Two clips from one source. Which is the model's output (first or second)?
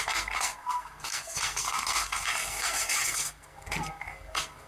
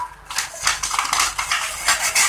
first